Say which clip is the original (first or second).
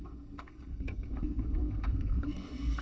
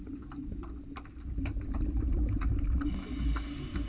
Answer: second